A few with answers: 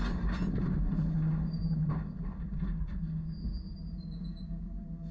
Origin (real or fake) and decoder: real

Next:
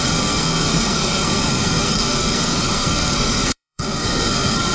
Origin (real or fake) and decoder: fake, codec, SNAC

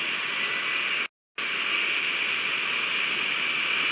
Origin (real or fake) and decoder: real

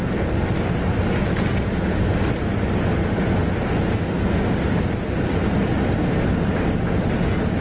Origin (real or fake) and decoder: real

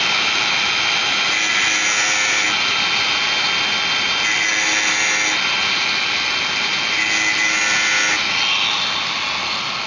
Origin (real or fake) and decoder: real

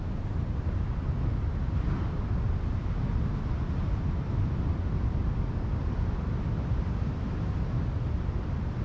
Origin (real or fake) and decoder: real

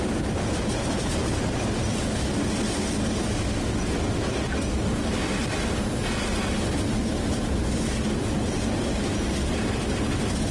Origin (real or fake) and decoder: real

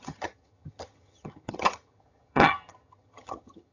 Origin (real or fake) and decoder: fake, vocoder, HiFi-GAN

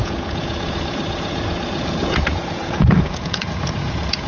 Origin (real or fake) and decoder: fake, vocoder, Vocos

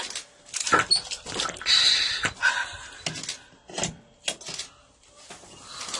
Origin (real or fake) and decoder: real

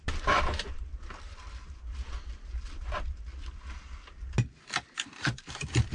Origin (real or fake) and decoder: real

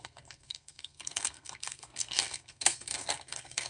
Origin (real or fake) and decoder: fake, codec, SNAC